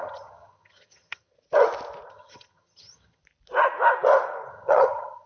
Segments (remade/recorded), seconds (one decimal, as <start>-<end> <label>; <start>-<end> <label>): 0.0-1.3 remade; 1.3-2.1 recorded; 2.1-3.2 remade; 3.2-4.5 recorded; 4.5-5.3 remade